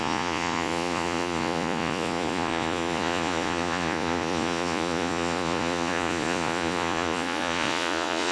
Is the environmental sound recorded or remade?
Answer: remade